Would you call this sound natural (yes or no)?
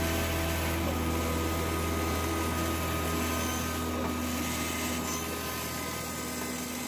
yes